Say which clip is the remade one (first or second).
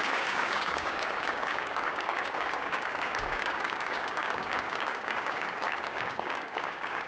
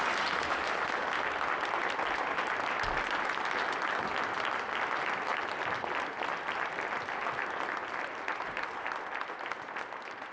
first